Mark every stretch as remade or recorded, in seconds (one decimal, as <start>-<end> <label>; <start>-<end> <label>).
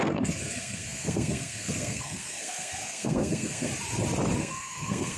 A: 0.0-3.7 remade; 3.7-4.4 recorded; 4.4-5.2 remade